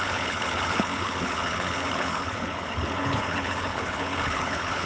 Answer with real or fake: fake